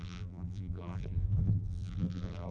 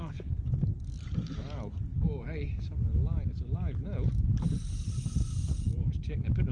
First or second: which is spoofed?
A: first